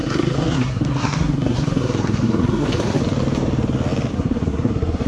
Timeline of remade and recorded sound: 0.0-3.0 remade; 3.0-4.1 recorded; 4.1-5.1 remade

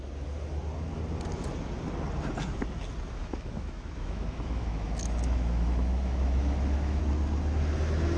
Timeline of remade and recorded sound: 0.0-3.2 recorded; 3.2-7.0 remade; 7.0-8.2 recorded

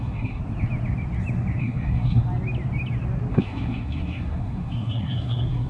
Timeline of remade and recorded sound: 0.0-0.4 remade; 0.4-1.6 recorded; 1.6-2.2 remade; 2.2-3.3 recorded; 3.3-5.7 remade

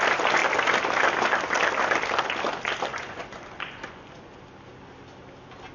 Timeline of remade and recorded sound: 0.0-2.9 recorded; 2.9-4.4 remade; 4.4-5.7 recorded

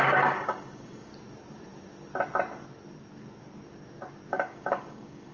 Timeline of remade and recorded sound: 0.0-1.1 remade; 1.1-4.3 recorded; 4.3-5.3 remade

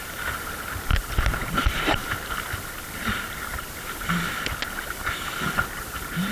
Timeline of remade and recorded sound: 0.0-0.9 remade; 0.9-1.5 recorded; 1.5-2.0 remade; 2.0-5.7 recorded; 5.7-6.3 remade

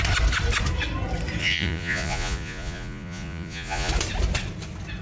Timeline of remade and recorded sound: 0.0-1.4 recorded; 1.4-3.9 remade; 3.9-5.0 recorded